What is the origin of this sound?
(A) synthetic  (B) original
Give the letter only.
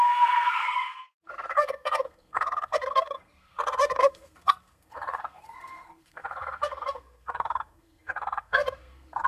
A